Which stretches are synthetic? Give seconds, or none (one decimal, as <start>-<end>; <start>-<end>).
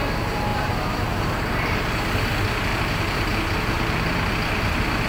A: 0.5-1.3; 2.7-4.3